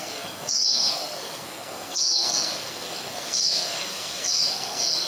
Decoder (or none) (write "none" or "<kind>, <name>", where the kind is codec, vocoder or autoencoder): codec, SNAC